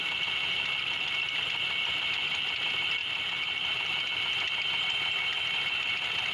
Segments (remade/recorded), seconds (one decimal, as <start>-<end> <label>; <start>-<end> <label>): 0.0-6.3 recorded